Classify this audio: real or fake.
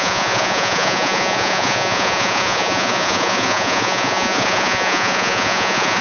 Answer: fake